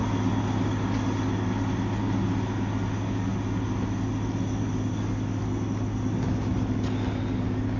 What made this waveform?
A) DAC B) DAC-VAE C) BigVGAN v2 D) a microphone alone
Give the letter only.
D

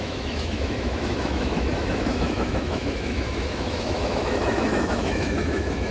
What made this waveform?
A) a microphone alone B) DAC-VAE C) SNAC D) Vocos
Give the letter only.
B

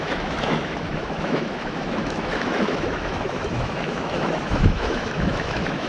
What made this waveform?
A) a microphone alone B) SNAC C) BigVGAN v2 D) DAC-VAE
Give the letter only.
D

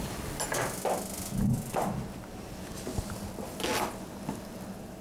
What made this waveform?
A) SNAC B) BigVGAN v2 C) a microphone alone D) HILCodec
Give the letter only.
C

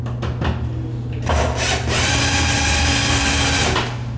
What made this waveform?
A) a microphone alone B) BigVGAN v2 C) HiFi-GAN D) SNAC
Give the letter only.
A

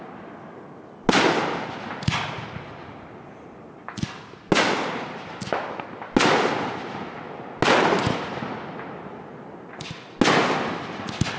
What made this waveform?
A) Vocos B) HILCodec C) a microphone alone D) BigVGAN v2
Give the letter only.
C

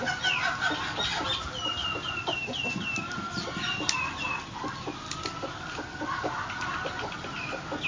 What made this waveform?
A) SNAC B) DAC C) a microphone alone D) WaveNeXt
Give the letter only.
C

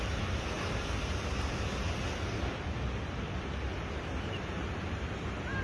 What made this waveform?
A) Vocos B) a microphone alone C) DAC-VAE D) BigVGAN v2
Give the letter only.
B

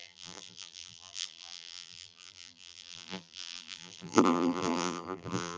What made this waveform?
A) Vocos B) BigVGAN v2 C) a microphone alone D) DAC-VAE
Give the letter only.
B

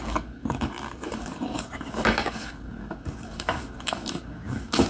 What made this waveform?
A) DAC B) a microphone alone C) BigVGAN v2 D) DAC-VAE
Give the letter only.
A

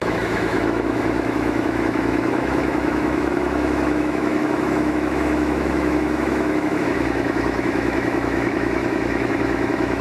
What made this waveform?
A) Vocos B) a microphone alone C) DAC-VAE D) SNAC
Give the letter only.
C